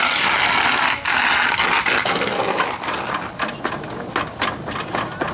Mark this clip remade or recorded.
recorded